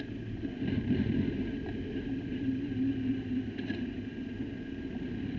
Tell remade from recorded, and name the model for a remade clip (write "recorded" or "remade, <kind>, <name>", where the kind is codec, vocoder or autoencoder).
recorded